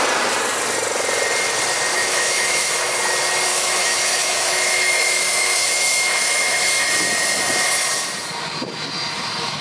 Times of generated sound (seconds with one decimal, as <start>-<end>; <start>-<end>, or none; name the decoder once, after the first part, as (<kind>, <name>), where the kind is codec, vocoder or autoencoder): 1.9-2.7 (autoencoder, DAC-VAE); 3.5-6.9